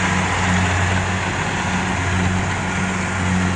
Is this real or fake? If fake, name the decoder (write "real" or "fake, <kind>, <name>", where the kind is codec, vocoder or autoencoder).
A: real